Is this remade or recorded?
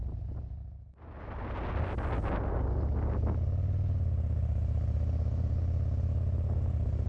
recorded